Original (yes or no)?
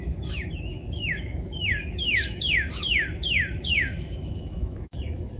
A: no